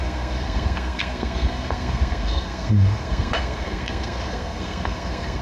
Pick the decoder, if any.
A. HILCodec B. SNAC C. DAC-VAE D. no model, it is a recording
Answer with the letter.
B